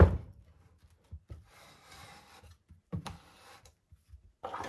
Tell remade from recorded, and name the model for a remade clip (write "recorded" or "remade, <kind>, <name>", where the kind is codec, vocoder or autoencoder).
remade, vocoder, BigVGAN v2